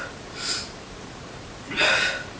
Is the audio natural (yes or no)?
yes